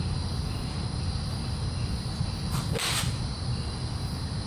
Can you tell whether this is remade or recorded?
recorded